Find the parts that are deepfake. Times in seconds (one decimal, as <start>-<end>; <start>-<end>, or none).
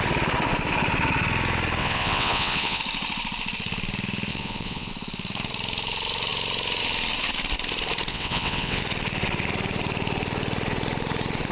1.8-2.8; 4.3-4.9; 8.1-8.8